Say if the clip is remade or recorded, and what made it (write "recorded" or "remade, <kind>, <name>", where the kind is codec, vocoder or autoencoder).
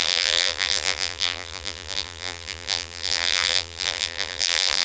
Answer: remade, vocoder, BigVGAN v2